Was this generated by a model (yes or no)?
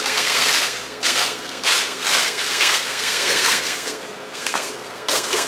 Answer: yes